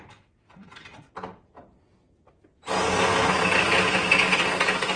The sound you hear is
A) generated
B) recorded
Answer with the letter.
B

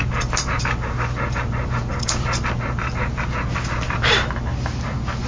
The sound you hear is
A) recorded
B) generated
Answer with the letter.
A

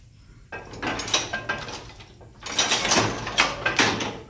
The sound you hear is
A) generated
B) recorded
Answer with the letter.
B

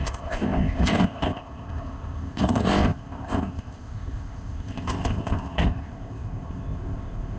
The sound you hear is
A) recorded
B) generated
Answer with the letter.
B